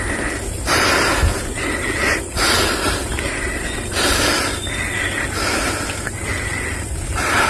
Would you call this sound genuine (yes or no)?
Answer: yes